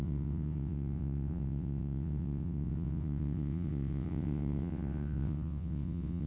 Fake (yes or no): yes